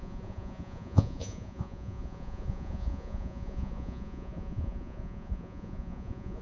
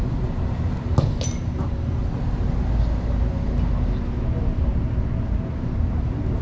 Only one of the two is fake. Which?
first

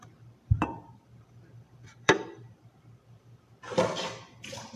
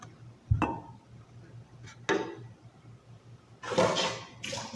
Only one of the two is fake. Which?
first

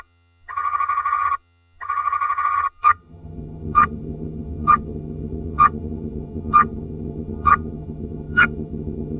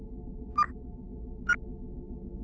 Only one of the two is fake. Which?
first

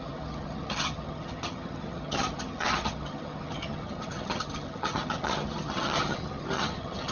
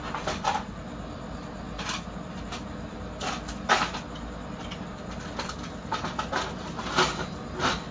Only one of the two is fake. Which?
first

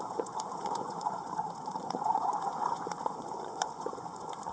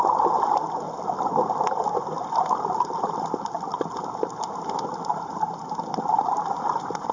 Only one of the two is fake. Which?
first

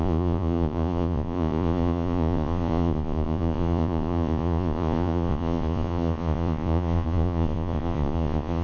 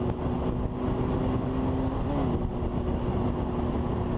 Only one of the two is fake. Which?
first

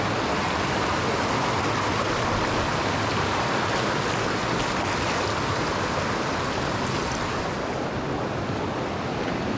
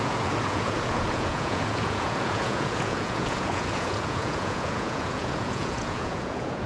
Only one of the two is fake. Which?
second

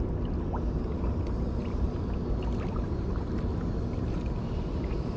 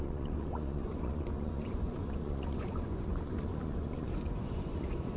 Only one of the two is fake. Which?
second